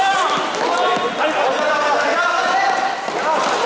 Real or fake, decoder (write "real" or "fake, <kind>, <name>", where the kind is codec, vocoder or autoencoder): real